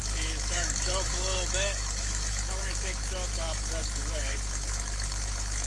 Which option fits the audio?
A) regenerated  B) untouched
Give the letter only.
A